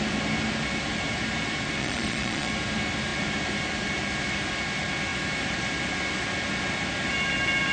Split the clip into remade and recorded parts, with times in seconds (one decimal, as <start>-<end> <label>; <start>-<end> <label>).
0.0-1.8 recorded; 1.8-2.5 remade; 2.5-7.7 recorded